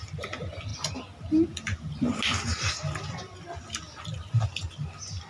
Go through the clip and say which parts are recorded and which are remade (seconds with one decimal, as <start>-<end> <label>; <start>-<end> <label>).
0.0-5.3 recorded